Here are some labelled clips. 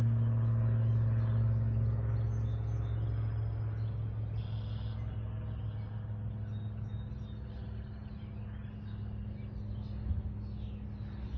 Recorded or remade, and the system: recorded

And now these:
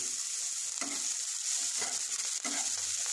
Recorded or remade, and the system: recorded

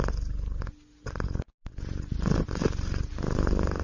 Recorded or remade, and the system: recorded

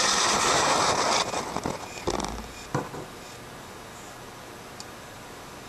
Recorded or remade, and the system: recorded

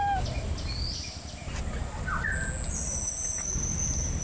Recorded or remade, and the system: recorded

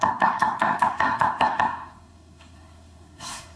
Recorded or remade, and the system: remade, codec, SNAC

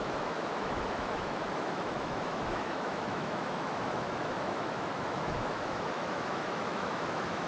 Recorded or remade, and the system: remade, autoencoder, DAC-VAE